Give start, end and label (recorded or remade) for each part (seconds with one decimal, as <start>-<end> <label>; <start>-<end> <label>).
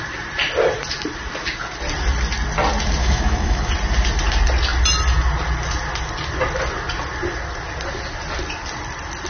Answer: 0.0-3.0 recorded; 3.0-3.7 remade; 3.7-9.3 recorded